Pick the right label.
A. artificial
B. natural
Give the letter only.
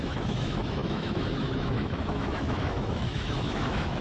A